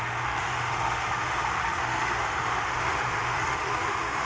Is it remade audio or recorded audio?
remade